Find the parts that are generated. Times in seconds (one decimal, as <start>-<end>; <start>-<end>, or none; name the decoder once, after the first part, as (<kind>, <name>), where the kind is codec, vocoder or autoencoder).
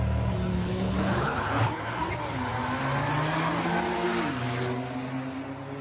0.5-2.0 (codec, HILCodec)